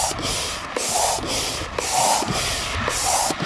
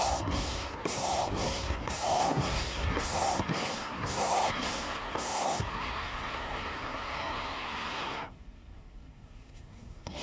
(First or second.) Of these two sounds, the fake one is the second